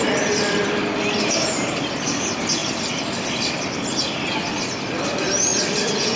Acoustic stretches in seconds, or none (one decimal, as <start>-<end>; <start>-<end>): 0.0-5.5

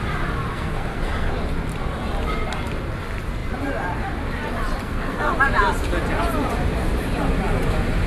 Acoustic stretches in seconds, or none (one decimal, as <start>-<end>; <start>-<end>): 0.0-0.5; 1.3-4.8; 5.3-8.1

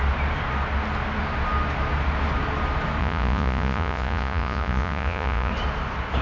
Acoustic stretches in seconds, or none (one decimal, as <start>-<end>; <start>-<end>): 0.0-3.0; 5.5-6.2

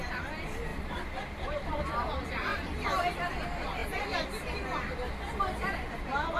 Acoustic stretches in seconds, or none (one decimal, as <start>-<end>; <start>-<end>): 0.0-0.7; 1.8-6.4

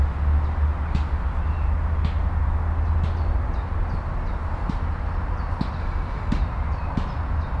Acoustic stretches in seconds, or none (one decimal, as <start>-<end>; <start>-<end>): 0.0-5.8; 6.4-7.6